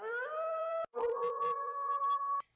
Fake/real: fake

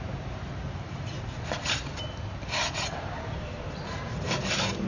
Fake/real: fake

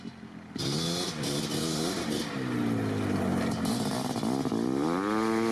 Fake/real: real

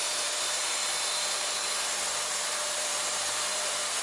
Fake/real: fake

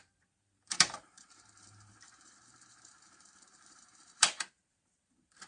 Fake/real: fake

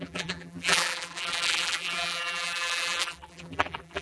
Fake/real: fake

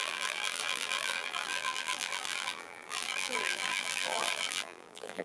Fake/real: fake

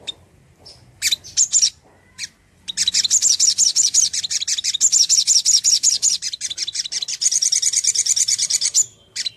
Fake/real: fake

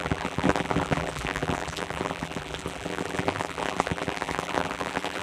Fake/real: fake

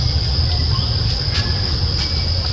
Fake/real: real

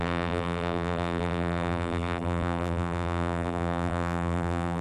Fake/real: fake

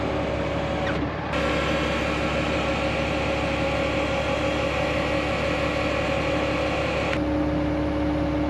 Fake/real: real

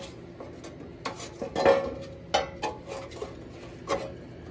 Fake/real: real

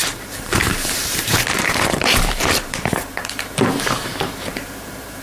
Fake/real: fake